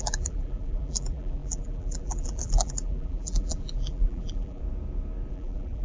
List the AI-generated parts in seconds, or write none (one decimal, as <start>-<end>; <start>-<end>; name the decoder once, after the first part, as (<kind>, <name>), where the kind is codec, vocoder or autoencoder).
0.0-4.6 (vocoder, BigVGAN v2); 5.3-5.8